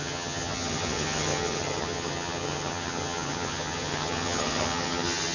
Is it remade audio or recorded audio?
remade